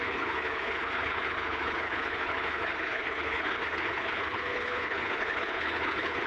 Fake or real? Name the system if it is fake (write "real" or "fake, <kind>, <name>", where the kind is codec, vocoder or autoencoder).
fake, codec, HILCodec